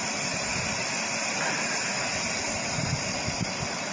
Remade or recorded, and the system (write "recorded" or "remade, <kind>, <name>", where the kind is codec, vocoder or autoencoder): remade, vocoder, BigVGAN v2